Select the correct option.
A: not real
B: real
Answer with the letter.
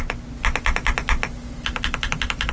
B